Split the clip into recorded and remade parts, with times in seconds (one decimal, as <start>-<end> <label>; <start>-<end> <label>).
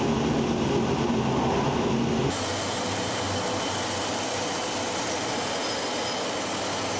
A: 0.0-7.0 recorded